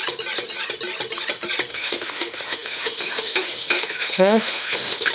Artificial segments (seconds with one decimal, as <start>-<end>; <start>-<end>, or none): 1.7-5.1